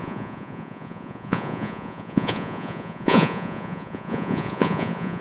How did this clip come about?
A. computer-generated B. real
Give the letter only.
A